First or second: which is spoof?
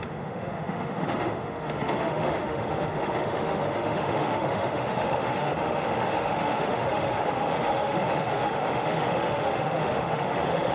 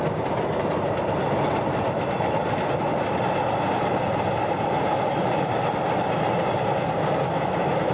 first